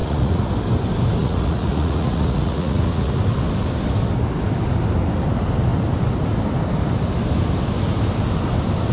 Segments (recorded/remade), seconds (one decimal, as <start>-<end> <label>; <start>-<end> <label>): 0.0-0.5 remade; 0.5-1.2 recorded; 1.2-3.2 remade; 3.2-8.9 recorded